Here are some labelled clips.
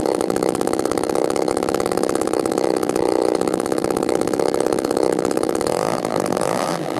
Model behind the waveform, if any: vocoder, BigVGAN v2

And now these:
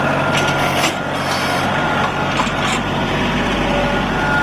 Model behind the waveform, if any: none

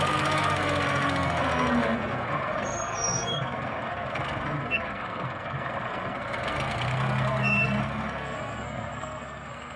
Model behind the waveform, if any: codec, SNAC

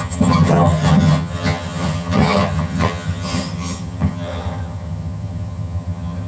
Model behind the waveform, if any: vocoder, HiFi-GAN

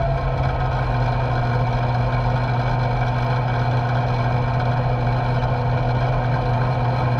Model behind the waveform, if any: none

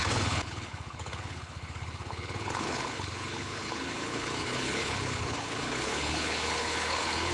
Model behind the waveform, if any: codec, HILCodec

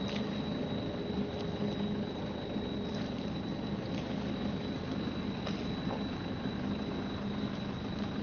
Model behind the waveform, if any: none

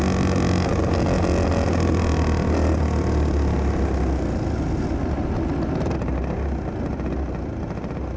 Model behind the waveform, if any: none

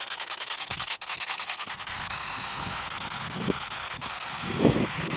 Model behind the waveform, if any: codec, SNAC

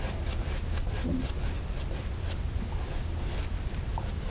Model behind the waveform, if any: none